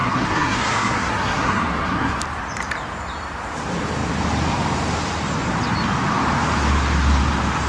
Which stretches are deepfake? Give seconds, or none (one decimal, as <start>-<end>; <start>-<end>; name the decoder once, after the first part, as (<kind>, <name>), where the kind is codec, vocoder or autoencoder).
0.0-2.2 (codec, SNAC)